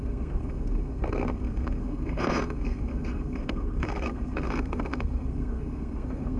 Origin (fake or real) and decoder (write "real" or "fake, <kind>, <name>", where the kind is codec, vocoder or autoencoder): fake, codec, SNAC